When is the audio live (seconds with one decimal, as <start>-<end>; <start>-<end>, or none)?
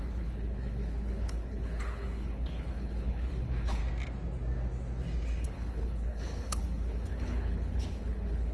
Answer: 3.8-5.4